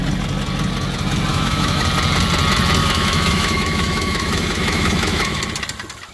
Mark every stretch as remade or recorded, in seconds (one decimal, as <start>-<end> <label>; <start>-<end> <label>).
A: 0.0-1.3 recorded; 1.3-1.8 remade; 1.8-2.8 recorded; 2.8-5.4 remade; 5.4-6.1 recorded